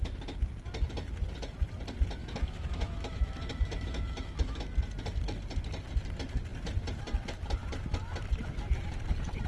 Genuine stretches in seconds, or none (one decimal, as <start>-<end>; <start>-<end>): 0.0-2.2; 4.6-9.5